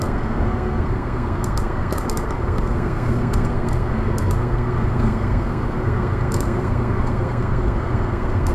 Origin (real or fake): fake